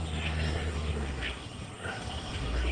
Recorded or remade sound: remade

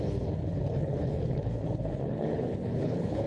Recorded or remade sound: remade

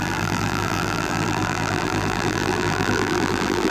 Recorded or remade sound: remade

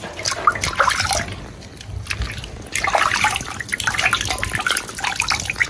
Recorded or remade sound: recorded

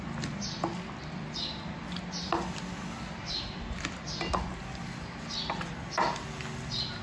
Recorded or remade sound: recorded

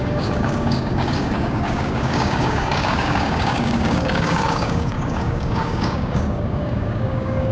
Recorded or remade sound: remade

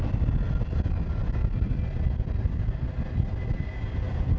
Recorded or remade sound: recorded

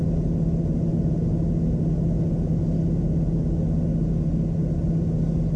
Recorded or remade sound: recorded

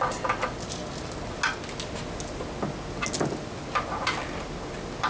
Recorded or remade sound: recorded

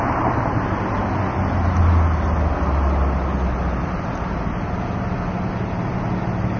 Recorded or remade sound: recorded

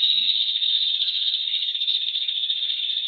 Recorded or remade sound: remade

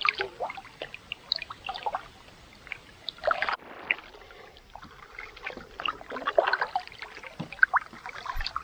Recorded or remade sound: recorded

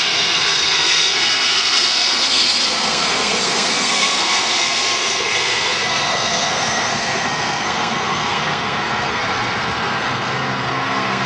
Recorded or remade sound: remade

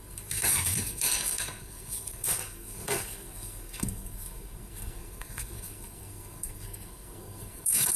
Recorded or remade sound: remade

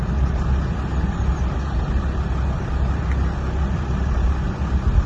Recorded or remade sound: recorded